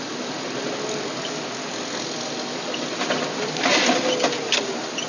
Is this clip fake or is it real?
real